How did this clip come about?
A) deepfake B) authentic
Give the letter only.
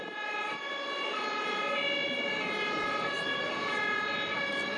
B